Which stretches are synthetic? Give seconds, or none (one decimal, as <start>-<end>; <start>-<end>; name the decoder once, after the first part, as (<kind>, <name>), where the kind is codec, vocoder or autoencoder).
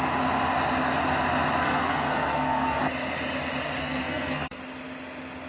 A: 1.6-2.8 (codec, SNAC); 3.8-4.6